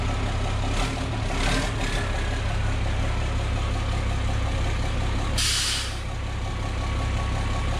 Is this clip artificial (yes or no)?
no